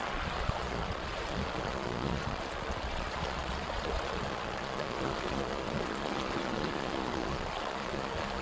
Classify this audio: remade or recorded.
remade